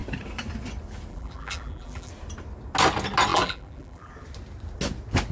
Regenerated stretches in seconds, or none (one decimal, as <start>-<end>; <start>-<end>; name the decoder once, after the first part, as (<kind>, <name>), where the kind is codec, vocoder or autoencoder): 1.1-2.1 (vocoder, BigVGAN v2); 3.3-4.1